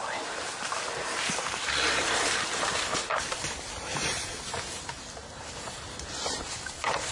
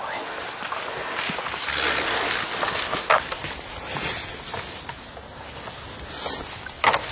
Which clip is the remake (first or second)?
first